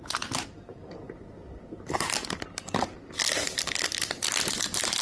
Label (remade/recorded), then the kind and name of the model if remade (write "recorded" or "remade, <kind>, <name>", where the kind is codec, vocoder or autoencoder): recorded